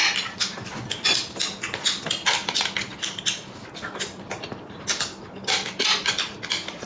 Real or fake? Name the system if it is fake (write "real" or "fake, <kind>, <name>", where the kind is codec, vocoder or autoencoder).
real